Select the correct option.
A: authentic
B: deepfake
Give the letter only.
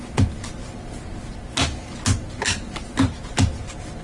A